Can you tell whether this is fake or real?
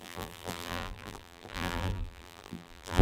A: fake